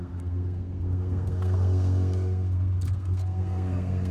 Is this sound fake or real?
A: fake